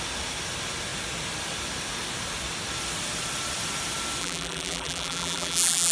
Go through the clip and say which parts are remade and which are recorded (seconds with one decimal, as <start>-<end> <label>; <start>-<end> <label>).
0.0-4.2 recorded; 4.2-5.9 remade